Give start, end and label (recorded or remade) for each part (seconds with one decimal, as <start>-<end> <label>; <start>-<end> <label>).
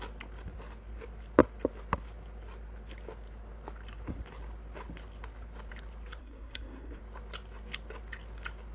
0.0-6.2 recorded; 6.2-7.0 remade; 7.0-8.7 recorded